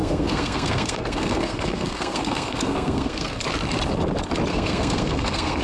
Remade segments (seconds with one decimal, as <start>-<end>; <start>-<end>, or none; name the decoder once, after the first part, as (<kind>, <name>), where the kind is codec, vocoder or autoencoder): 0.0-3.4 (codec, SNAC); 4.5-5.6